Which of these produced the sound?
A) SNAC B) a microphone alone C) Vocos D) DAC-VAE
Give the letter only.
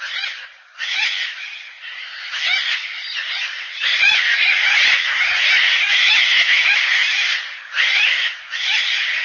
B